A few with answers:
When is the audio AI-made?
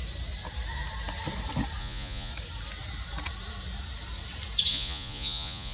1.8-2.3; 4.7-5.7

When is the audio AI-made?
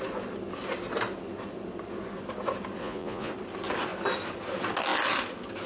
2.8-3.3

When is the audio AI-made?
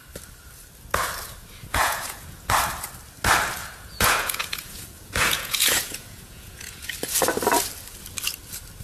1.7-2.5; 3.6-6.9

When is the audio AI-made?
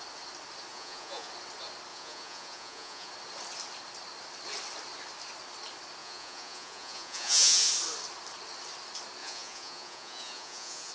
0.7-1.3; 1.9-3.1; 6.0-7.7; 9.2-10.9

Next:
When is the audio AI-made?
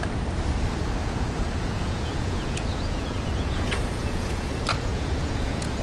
1.0-4.5; 4.9-5.8